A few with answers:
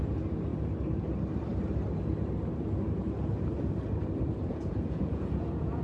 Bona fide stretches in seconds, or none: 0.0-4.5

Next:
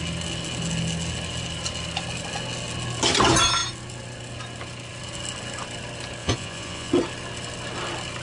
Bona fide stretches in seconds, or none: 0.0-6.2; 6.9-8.2